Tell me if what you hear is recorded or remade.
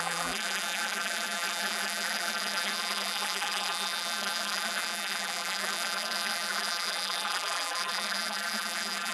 remade